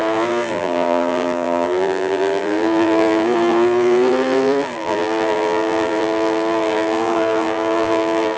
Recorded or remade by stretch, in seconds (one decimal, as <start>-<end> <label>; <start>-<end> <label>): 0.0-8.4 remade